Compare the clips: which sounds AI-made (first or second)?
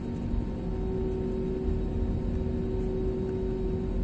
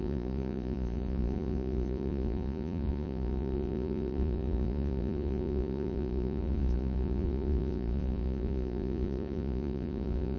second